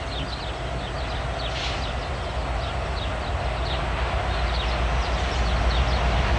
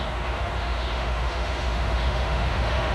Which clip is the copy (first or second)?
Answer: second